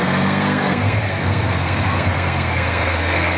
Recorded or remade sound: remade